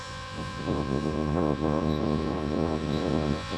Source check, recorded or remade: remade